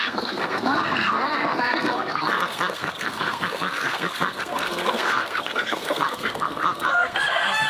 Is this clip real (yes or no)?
no